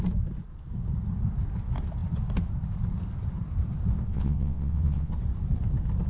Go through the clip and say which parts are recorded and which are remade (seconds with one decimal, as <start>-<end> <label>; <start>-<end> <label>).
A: 0.0-4.1 recorded; 4.1-5.1 remade; 5.1-6.1 recorded